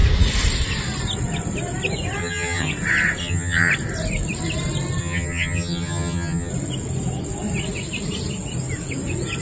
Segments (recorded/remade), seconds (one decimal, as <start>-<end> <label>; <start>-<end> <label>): 0.0-2.2 recorded; 2.2-2.7 remade; 2.7-3.2 recorded; 3.2-3.7 remade; 3.7-5.0 recorded; 5.0-6.5 remade; 6.5-9.4 recorded